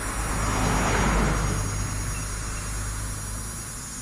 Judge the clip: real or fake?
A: real